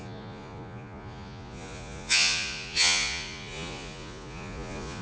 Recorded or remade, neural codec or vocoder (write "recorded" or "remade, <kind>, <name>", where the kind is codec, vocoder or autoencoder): remade, vocoder, Vocos